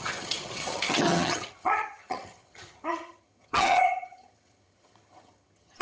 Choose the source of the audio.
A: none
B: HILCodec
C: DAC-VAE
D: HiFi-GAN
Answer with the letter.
D